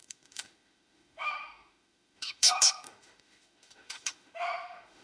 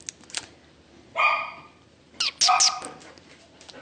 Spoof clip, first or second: first